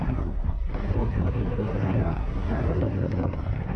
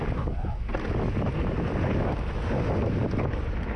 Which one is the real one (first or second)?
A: second